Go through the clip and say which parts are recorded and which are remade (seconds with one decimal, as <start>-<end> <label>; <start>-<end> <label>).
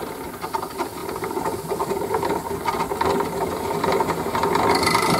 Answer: 0.0-5.2 recorded